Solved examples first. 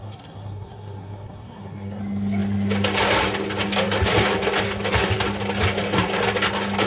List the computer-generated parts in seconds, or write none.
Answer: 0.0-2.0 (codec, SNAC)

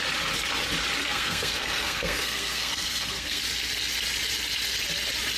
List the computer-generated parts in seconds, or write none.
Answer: 1.0-3.4 (codec, SNAC)

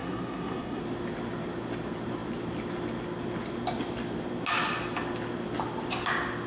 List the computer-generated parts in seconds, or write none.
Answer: 0.0-0.8 (codec, SNAC)

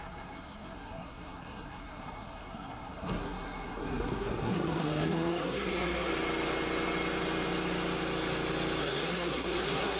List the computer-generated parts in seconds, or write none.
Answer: 0.0-6.1 (codec, SNAC); 8.8-10.0